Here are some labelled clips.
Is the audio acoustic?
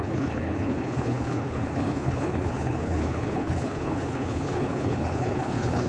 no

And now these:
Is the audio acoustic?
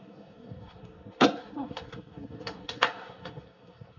no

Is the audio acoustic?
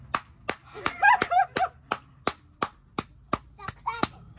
yes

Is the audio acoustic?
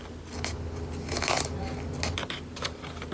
yes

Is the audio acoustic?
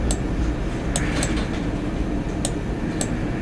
yes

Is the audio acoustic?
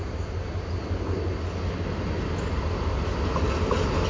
yes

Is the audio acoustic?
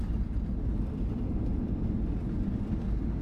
yes